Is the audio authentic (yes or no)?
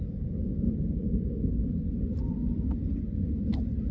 yes